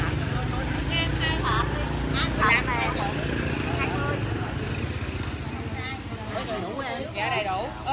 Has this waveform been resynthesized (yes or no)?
no